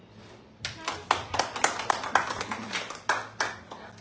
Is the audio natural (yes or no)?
yes